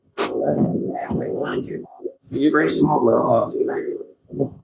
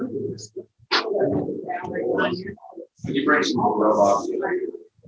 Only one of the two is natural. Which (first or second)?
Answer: second